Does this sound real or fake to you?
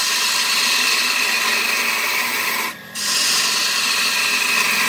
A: fake